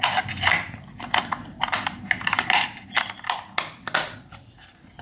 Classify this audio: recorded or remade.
recorded